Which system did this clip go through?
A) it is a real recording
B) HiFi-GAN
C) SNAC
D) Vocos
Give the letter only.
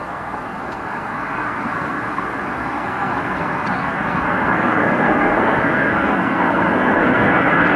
C